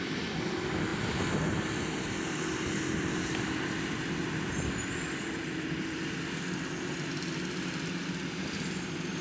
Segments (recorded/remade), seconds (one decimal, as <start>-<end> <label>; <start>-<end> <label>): 0.0-0.9 remade; 0.9-1.7 recorded; 1.7-9.2 remade